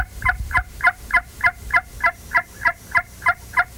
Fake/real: fake